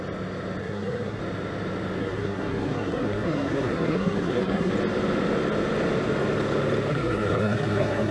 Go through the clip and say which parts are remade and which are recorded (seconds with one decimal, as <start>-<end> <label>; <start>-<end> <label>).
0.0-0.6 recorded; 0.6-1.2 remade; 1.2-2.0 recorded; 2.0-4.7 remade; 4.7-6.9 recorded; 6.9-8.1 remade